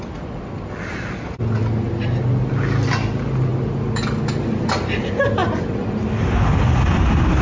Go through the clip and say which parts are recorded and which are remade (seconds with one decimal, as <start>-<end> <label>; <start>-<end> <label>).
0.0-7.4 recorded